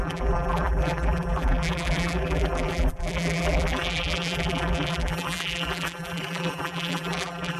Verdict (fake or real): fake